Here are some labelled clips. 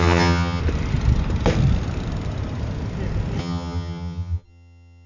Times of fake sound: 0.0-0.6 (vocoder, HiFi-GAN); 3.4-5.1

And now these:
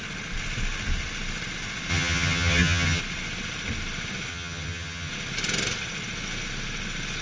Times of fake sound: 1.9-3.0 (vocoder, HiFi-GAN); 4.3-5.1